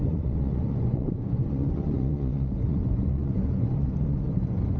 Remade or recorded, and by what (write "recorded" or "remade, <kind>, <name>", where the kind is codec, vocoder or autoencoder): remade, vocoder, Vocos